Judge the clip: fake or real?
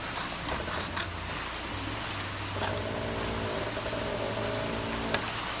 real